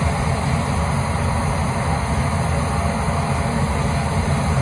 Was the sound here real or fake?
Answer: real